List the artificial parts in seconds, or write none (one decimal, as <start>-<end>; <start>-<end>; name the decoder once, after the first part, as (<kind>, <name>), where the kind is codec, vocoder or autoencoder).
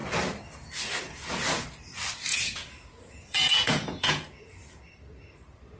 2.3-4.4 (vocoder, Vocos)